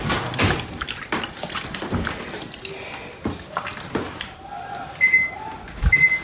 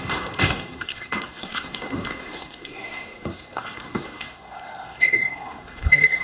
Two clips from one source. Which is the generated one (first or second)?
second